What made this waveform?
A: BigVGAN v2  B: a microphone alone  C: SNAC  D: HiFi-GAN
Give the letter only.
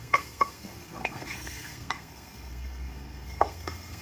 C